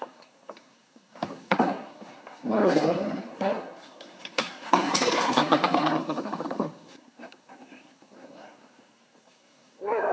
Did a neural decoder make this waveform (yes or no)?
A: yes